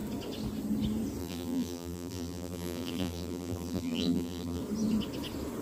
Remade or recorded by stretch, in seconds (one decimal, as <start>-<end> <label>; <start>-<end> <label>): 0.0-1.2 recorded; 1.2-4.6 remade; 4.6-5.6 recorded